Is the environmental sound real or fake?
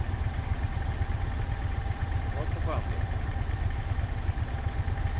real